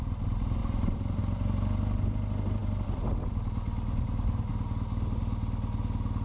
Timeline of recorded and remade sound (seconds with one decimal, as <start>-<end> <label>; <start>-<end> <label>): 0.0-0.6 recorded; 0.6-1.2 remade; 1.2-6.2 recorded